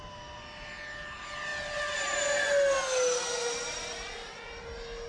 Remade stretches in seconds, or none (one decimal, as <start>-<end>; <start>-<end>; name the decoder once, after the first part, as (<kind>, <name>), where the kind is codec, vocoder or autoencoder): none

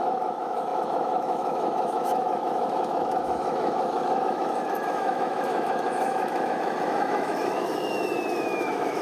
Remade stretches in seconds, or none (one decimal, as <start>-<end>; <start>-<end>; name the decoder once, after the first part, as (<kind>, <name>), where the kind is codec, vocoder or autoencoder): 0.0-9.0 (autoencoder, DAC-VAE)

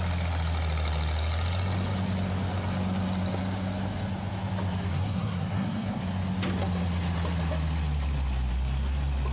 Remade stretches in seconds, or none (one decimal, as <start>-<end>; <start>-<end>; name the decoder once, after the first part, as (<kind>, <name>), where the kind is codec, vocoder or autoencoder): 4.9-6.0 (codec, SNAC)

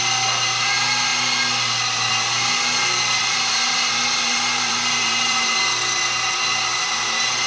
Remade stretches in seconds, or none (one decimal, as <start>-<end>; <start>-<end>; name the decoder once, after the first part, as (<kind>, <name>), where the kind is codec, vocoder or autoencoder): 3.2-5.6 (vocoder, BigVGAN v2)

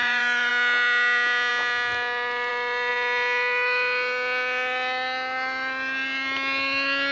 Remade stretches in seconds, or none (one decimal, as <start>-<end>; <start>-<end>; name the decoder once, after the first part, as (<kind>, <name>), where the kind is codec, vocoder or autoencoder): 0.0-0.5 (vocoder, BigVGAN v2)

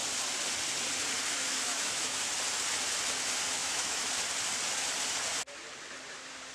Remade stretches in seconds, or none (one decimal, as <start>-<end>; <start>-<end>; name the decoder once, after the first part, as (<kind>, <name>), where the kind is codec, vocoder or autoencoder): 1.3-2.2 (autoencoder, DAC-VAE); 3.6-4.1

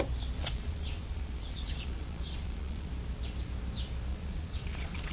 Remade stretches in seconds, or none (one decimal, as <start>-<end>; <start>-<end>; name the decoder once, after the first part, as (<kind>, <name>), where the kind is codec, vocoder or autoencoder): 0.4-2.9 (vocoder, Vocos); 4.1-5.1